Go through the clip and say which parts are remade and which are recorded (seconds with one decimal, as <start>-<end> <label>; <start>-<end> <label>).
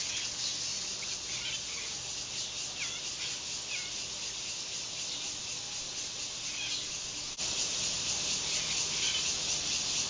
0.0-10.1 recorded